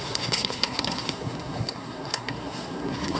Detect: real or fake fake